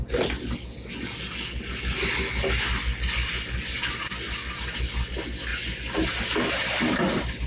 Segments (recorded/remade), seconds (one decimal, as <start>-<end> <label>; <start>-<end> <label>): 0.0-7.5 recorded